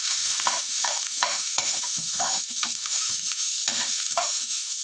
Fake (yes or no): yes